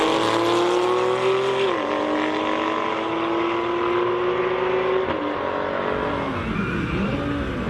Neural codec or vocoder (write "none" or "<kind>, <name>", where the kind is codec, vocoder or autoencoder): none